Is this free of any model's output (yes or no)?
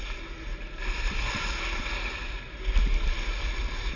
yes